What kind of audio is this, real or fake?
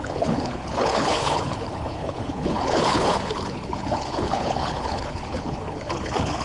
fake